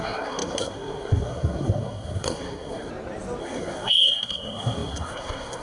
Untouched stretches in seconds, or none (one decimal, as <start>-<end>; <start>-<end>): 2.9-3.4

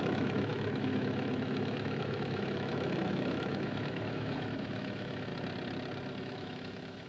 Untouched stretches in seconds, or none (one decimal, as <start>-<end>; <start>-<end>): 5.3-6.2

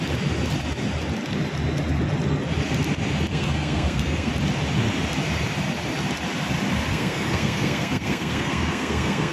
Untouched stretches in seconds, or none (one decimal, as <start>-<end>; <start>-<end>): 0.0-3.3; 4.3-6.9

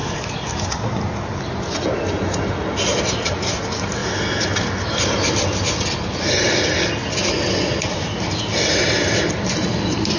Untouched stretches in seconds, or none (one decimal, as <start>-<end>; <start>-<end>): 0.7-10.2